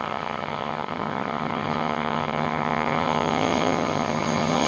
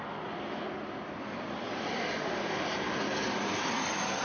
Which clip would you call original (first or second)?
second